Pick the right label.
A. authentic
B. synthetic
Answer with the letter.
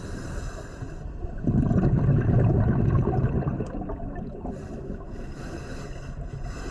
A